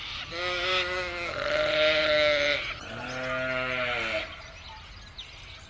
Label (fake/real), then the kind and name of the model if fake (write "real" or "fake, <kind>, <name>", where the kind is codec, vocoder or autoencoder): real